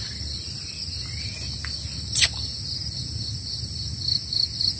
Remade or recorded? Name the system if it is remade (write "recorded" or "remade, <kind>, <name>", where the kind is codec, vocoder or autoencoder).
recorded